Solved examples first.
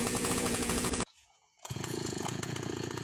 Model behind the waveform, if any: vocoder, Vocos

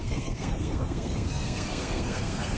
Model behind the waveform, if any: codec, SNAC